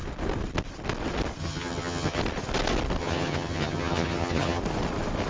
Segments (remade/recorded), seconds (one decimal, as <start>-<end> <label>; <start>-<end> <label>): 0.0-1.4 recorded; 1.4-2.2 remade; 2.2-3.0 recorded; 3.0-4.6 remade; 4.6-5.3 recorded